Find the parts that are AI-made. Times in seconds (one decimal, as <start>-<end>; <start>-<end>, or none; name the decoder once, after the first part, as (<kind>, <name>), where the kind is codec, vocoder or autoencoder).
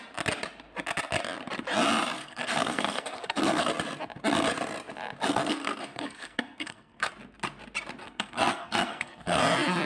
2.2-3.7 (codec, SNAC); 5.3-7.1; 8.0-9.4